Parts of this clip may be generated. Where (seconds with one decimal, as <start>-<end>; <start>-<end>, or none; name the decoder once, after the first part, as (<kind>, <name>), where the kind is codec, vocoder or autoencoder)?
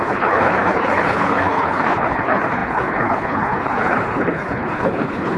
0.0-5.4 (codec, HILCodec)